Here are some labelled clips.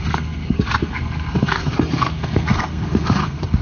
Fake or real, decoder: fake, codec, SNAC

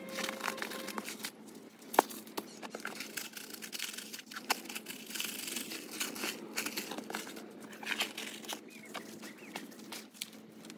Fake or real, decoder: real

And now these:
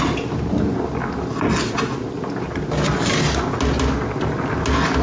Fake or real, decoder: real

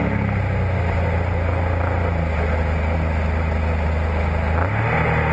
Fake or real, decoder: real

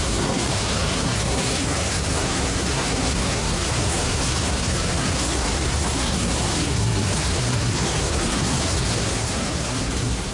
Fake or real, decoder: fake, codec, SNAC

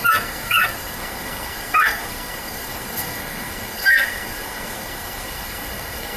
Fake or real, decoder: fake, codec, SNAC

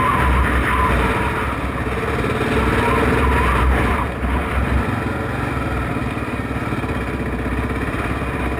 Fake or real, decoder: real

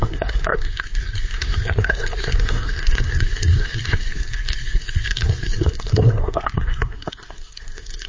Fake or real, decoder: fake, codec, SNAC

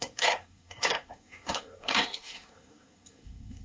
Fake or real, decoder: fake, codec, SNAC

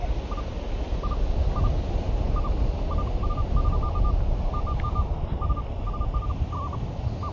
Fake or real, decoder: real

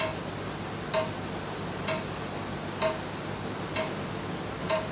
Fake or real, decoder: real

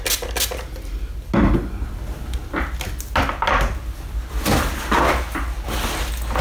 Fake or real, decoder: real